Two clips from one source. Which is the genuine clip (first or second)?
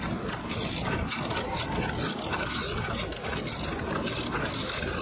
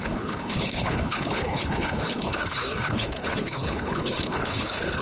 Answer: first